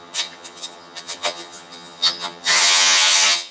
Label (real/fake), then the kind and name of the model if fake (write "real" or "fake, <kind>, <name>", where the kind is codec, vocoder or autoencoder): fake, vocoder, HiFi-GAN